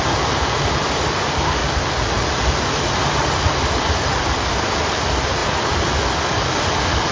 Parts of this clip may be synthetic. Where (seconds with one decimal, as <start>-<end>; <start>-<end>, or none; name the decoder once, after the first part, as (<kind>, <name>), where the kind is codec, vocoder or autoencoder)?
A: 0.0-1.6 (vocoder, BigVGAN v2); 3.0-7.1